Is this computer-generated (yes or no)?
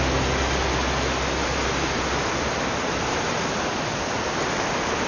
no